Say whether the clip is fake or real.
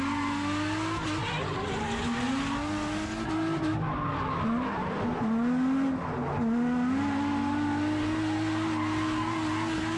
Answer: real